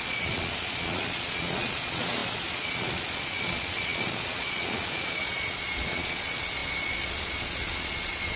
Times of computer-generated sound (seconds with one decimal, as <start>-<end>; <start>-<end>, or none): 0.0-8.4